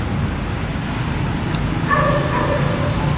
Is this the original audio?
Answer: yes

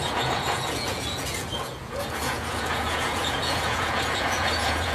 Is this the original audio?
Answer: no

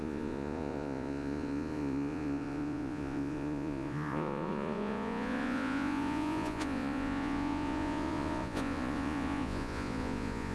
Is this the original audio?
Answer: no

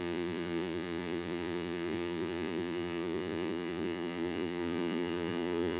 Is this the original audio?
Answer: no